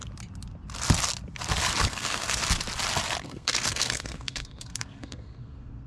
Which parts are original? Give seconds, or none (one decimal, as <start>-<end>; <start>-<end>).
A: 0.0-1.9; 2.4-3.2